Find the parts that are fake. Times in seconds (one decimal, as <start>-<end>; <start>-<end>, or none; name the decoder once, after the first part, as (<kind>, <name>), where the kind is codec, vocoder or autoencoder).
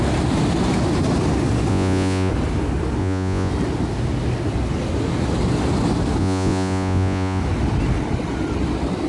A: 1.7-2.3 (vocoder, Vocos); 3.0-3.5; 6.2-7.4